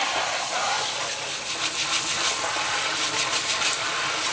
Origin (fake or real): real